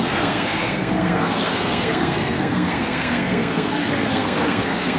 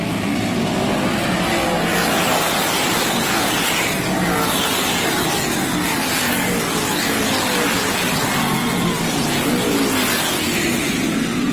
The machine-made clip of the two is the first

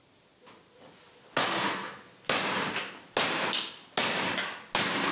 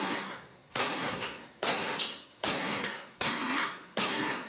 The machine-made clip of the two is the second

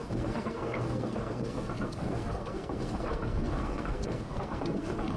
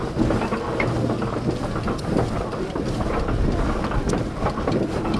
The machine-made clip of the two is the first